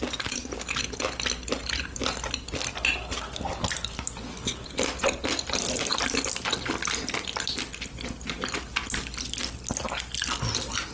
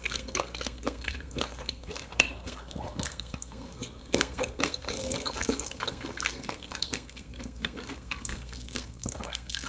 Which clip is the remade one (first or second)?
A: second